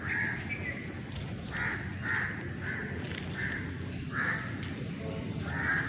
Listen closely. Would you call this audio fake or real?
real